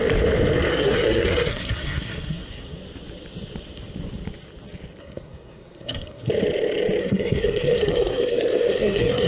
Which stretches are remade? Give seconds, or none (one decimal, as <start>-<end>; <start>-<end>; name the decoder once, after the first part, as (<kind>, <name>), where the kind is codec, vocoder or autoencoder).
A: 0.7-2.8 (codec, SNAC); 5.0-6.3; 7.0-9.3

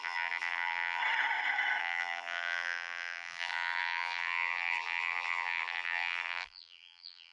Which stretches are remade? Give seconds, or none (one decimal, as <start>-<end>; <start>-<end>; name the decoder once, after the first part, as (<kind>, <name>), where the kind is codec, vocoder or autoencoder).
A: 0.0-1.0 (vocoder, BigVGAN v2); 1.8-7.3

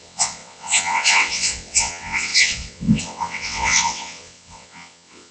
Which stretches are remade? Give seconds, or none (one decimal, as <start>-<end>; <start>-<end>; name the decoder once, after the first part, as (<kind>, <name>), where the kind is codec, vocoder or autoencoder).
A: 0.0-5.3 (vocoder, WaveNeXt)

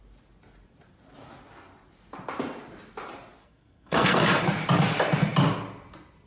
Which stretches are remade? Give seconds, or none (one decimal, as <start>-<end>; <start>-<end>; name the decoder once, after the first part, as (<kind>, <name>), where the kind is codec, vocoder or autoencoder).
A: 3.4-4.4 (codec, SNAC)

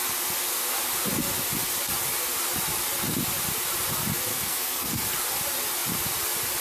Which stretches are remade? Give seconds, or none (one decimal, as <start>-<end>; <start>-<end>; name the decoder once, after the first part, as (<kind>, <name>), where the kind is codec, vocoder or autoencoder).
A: 4.3-5.0 (codec, SNAC)

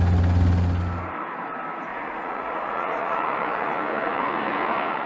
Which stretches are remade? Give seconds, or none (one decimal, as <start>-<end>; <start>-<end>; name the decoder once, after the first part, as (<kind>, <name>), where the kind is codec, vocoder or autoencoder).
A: 1.9-5.1 (vocoder, Vocos)

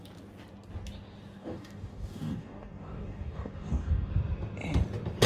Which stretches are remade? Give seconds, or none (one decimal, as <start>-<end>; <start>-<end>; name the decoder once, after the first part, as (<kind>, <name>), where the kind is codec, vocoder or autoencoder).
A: 1.4-4.1 (codec, DAC)

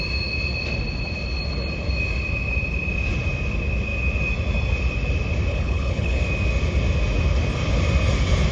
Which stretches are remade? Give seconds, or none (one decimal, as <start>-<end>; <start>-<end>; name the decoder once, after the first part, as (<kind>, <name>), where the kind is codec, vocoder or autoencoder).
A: 5.5-6.2 (codec, HILCodec)